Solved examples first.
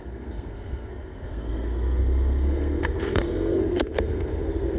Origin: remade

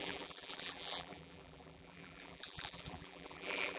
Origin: remade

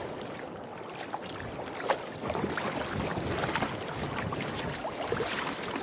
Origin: recorded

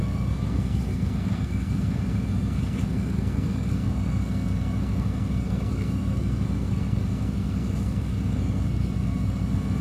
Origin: remade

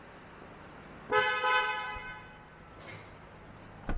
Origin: recorded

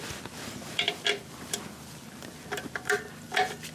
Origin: remade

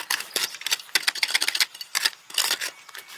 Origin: recorded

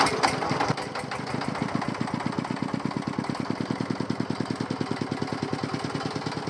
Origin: recorded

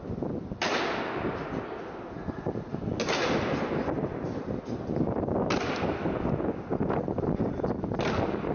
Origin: recorded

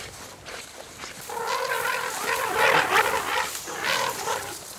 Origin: recorded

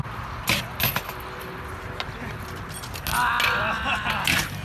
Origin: recorded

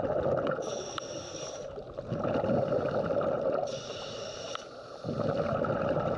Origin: recorded